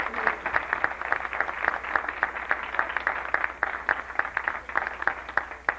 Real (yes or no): yes